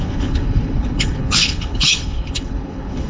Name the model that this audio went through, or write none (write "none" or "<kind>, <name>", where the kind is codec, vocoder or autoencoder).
codec, HILCodec